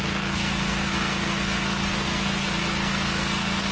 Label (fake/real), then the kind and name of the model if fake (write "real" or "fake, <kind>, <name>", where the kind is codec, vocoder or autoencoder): fake, codec, SNAC